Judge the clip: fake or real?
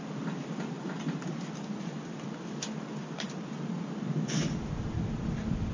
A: fake